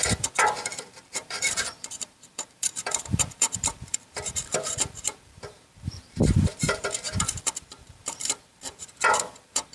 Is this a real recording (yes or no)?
no